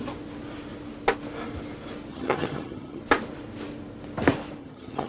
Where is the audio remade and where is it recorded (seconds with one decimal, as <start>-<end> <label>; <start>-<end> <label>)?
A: 0.0-2.1 recorded; 2.1-3.0 remade; 3.0-4.6 recorded; 4.6-5.1 remade